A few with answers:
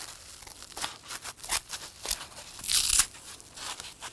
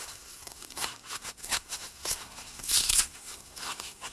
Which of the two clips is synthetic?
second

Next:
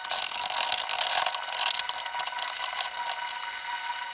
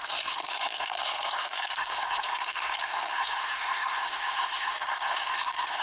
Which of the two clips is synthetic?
second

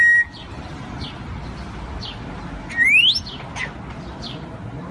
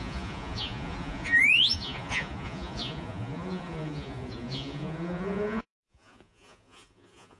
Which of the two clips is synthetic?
second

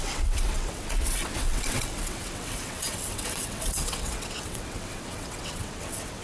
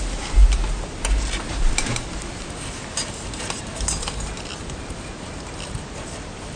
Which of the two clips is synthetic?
first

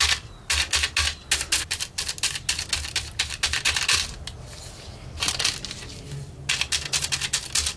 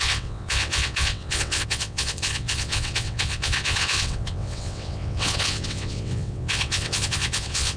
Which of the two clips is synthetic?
second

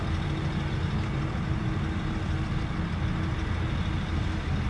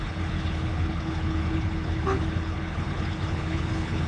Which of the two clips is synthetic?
second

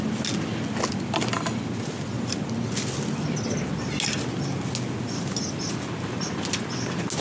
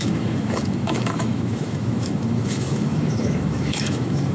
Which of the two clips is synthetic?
second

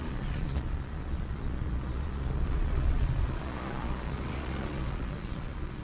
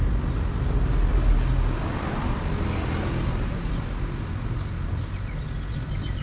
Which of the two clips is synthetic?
first